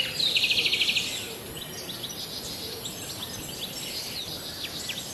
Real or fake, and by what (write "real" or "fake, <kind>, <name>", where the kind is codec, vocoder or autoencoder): real